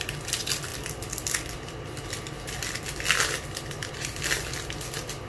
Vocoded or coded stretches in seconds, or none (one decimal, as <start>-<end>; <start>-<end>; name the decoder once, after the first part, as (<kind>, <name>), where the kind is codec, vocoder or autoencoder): none